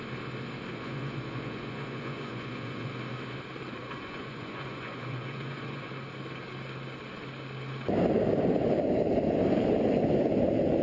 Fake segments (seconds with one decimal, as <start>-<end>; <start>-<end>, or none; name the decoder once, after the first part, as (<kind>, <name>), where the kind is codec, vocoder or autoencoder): 0.7-2.9 (vocoder, Vocos); 3.8-5.9